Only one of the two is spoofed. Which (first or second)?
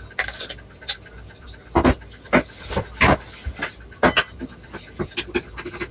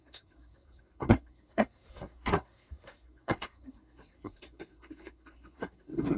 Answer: second